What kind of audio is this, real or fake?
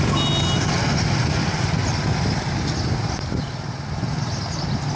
real